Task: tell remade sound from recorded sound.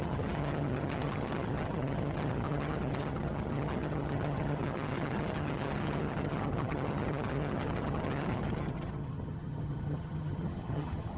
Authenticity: remade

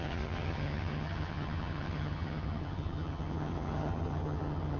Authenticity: remade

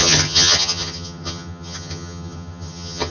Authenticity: remade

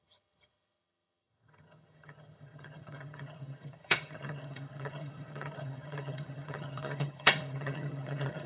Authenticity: remade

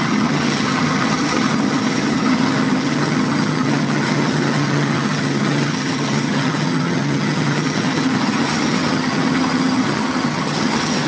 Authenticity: remade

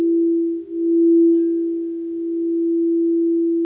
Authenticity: recorded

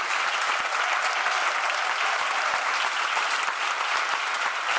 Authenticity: recorded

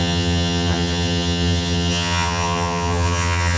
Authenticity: remade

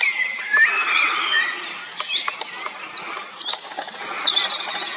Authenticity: recorded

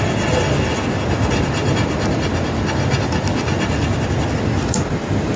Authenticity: recorded